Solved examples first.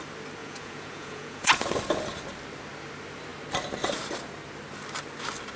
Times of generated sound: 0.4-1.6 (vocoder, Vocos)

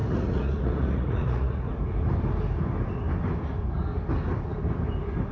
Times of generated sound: 0.0-1.7 (vocoder, Vocos)

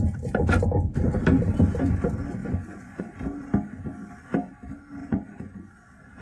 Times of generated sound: 2.4-3.0 (vocoder, Vocos); 5.0-5.7

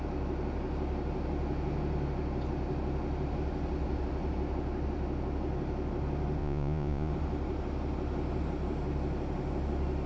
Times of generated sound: 6.4-7.1 (vocoder, Vocos)